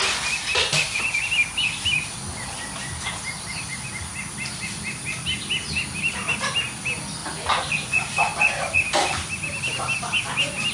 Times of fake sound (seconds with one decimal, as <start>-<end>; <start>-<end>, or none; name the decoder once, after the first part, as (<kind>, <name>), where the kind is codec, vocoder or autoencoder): none

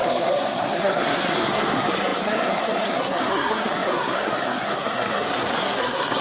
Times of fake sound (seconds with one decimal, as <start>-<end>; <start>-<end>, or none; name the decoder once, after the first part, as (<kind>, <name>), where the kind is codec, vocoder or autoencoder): 0.0-6.2 (codec, SNAC)

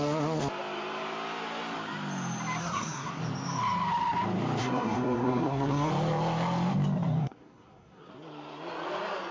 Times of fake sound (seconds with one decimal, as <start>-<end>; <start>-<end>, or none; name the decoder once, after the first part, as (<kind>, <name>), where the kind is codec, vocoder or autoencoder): 2.6-3.2 (codec, SNAC); 4.6-5.9; 7.2-8.1

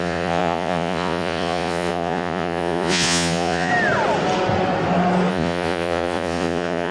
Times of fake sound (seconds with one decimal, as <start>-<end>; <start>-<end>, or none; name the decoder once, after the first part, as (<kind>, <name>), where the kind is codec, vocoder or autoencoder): 0.0-3.7 (vocoder, Vocos); 5.3-6.9

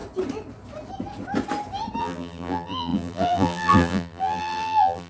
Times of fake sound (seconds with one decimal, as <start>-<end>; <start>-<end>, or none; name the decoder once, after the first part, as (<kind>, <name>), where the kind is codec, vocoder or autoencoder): 2.0-5.1 (vocoder, BigVGAN v2)

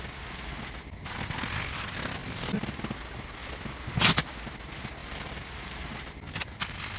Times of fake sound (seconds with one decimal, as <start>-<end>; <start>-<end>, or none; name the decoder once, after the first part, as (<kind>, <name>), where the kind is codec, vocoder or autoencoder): 2.2-2.8 (vocoder, BigVGAN v2); 5.0-6.1